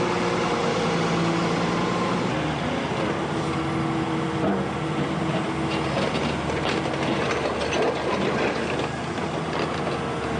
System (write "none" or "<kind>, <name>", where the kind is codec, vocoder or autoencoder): none